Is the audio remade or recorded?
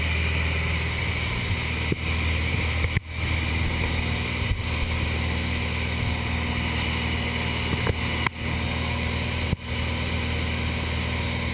recorded